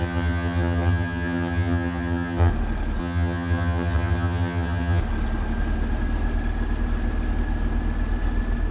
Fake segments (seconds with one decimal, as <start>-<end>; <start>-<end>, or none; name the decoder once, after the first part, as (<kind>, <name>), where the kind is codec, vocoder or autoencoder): 0.0-2.5 (vocoder, HiFi-GAN); 3.0-5.0